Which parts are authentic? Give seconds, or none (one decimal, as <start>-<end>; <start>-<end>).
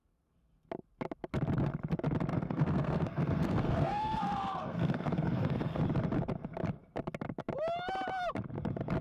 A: 0.0-2.3; 5.8-9.0